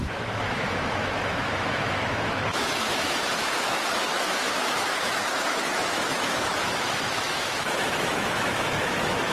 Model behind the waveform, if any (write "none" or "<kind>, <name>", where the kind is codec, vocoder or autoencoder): autoencoder, DAC-VAE